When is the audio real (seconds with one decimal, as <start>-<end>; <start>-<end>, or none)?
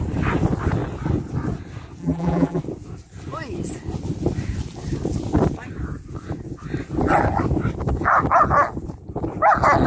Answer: 0.0-2.0; 2.6-9.9